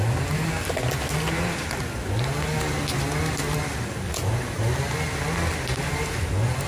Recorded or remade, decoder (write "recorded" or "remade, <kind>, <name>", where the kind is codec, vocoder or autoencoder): recorded